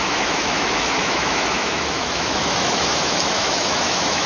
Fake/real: fake